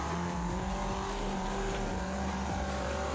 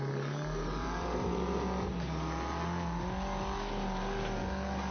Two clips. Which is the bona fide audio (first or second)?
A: second